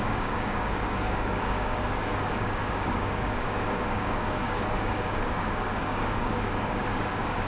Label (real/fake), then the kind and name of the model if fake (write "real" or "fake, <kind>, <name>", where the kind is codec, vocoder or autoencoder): fake, codec, DAC